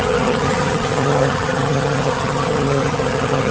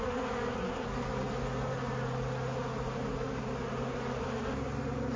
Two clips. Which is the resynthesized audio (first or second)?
first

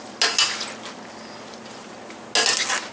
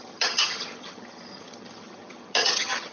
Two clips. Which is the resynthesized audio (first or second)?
second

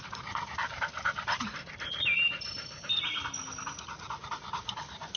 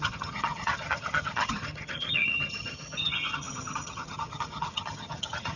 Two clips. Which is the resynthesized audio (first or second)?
second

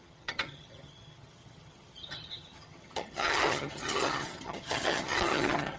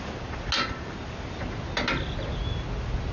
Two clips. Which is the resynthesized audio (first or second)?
first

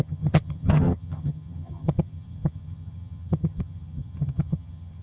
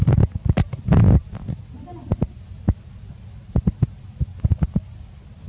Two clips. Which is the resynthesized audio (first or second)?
first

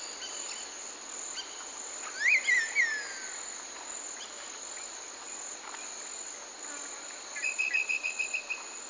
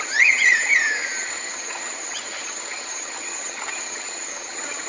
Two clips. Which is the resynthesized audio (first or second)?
second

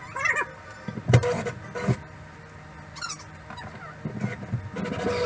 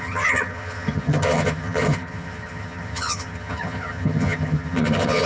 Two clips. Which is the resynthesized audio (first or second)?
second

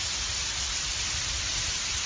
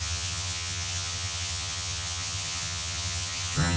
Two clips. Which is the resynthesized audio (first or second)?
second